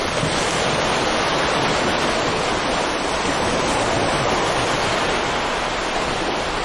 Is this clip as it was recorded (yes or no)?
yes